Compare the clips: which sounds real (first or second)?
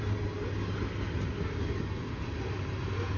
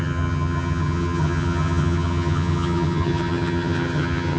first